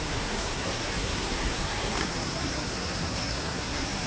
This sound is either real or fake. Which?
fake